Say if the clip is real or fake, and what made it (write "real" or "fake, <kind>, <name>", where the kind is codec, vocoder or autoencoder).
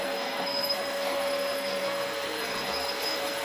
fake, codec, SNAC